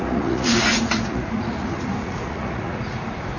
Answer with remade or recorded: remade